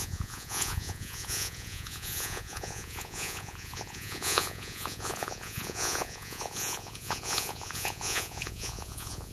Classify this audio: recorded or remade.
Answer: remade